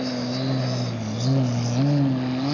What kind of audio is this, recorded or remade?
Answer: recorded